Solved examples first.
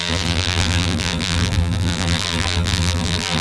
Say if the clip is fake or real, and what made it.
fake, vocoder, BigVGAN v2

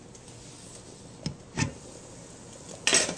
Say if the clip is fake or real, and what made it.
real